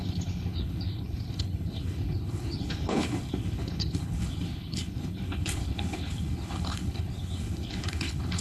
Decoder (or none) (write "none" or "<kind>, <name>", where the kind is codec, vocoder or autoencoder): codec, HILCodec